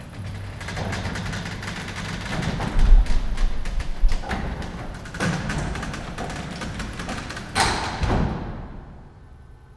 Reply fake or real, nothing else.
fake